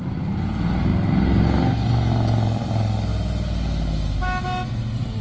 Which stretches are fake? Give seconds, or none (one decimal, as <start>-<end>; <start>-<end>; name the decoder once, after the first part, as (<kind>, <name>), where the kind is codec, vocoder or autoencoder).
none